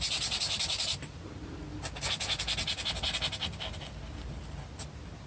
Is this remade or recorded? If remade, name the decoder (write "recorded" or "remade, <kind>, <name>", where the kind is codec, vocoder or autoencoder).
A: recorded